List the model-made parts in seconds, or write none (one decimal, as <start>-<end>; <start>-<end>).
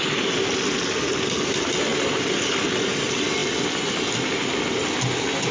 none